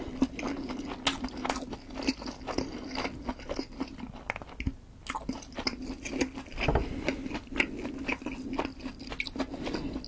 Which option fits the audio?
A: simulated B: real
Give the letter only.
B